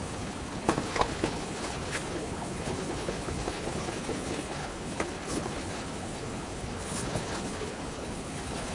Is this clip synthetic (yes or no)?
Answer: yes